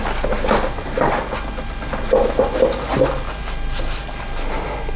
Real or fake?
real